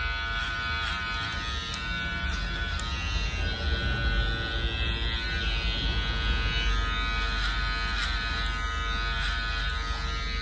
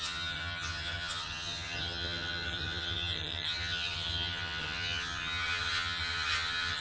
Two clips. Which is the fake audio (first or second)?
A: second